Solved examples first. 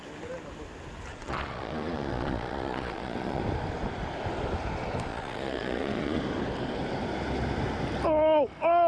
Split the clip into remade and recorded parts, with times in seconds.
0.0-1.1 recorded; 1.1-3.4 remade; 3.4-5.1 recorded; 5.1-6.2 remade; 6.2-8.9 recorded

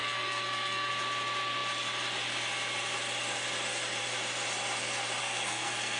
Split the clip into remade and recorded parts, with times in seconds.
0.0-0.9 remade; 0.9-5.2 recorded; 5.2-6.0 remade

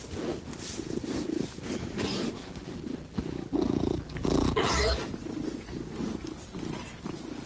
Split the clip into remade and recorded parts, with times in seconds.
0.0-2.4 recorded; 2.4-4.7 remade; 4.7-7.5 recorded

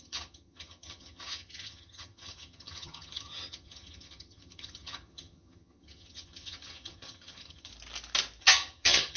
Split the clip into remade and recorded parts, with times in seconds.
0.0-7.7 remade; 7.7-8.4 recorded; 8.4-9.2 remade